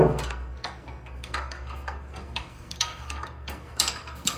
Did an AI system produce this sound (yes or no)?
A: yes